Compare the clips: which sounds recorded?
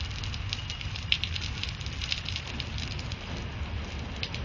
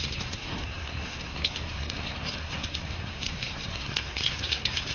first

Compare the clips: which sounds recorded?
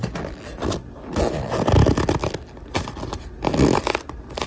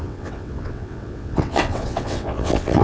first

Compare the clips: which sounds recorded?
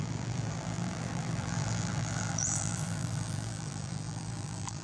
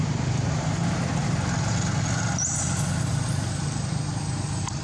second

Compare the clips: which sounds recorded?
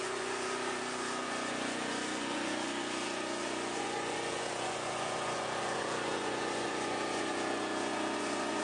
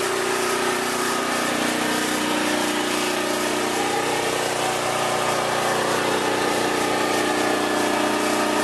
second